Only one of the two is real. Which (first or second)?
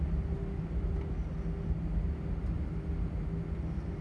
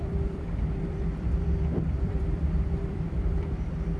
first